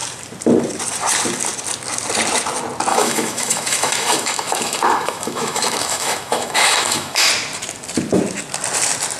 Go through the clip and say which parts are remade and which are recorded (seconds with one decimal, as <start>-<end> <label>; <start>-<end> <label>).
0.0-2.9 recorded; 2.9-7.3 remade; 7.3-9.2 recorded